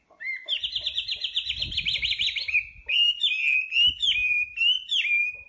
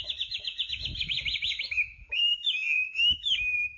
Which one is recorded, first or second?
first